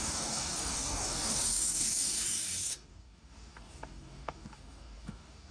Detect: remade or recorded remade